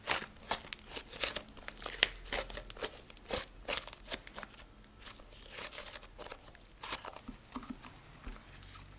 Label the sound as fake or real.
real